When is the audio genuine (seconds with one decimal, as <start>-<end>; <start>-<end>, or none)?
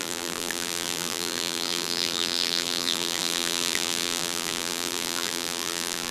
none